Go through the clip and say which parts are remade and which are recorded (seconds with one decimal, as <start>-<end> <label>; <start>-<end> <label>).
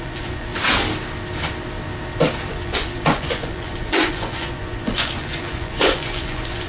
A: 0.0-0.5 remade; 0.5-2.5 recorded; 2.5-6.7 remade